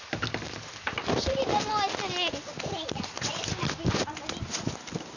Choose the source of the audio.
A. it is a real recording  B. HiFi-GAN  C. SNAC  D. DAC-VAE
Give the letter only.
A